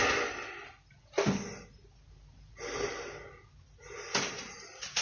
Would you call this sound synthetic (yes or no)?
no